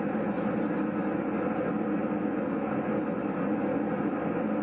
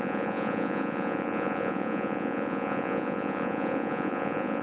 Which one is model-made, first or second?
second